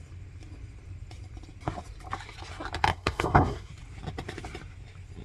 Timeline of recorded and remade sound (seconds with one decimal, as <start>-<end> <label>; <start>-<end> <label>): 0.0-2.9 recorded; 2.9-3.7 remade; 3.7-5.2 recorded